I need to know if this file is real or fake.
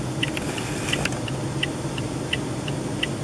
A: real